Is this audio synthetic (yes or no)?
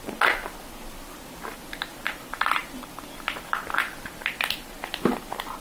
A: no